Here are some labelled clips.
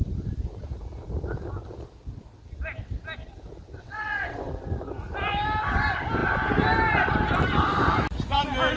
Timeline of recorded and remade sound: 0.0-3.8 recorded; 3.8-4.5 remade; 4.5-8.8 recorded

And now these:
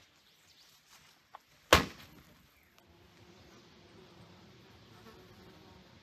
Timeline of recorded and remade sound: 0.0-6.0 recorded

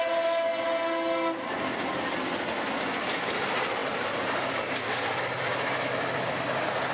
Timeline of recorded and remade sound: 0.0-6.9 recorded

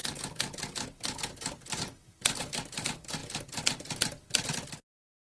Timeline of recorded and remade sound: 0.0-5.3 recorded

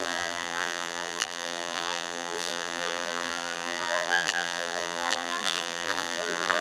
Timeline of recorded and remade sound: 0.0-6.6 remade

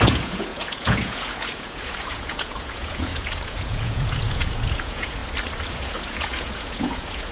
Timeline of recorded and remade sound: 0.0-5.2 remade; 5.2-5.7 recorded; 5.7-7.3 remade

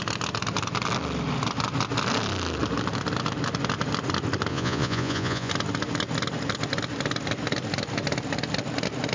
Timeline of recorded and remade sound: 0.0-4.5 recorded; 4.5-5.5 remade; 5.5-9.1 recorded

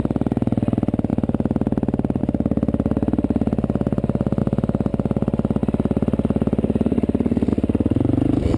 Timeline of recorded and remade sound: 0.0-8.6 recorded